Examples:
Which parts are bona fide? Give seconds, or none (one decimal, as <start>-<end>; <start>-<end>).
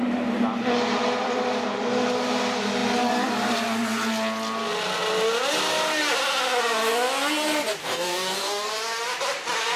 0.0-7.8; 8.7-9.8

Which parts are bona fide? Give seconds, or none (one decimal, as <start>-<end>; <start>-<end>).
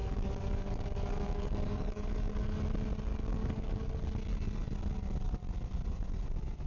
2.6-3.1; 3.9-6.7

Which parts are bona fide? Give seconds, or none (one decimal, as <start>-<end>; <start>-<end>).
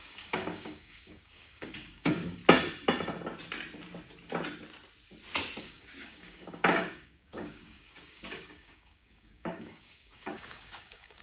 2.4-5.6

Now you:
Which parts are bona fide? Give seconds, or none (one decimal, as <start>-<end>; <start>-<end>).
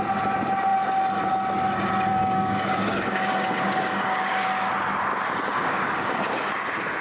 0.0-2.1; 4.7-5.5; 6.3-7.0